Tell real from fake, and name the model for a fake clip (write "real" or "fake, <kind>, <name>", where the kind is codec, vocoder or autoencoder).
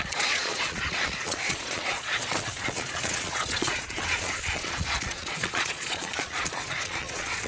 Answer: fake, vocoder, Vocos